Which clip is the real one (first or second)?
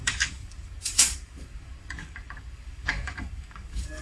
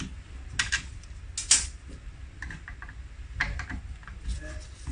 second